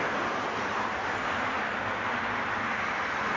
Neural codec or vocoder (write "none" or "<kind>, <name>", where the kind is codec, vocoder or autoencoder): none